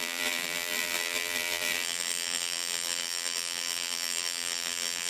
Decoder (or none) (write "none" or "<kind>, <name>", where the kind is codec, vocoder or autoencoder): vocoder, BigVGAN v2